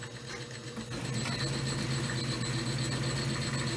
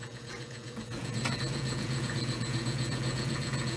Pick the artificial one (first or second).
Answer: second